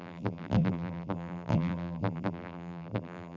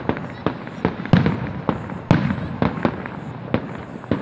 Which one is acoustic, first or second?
second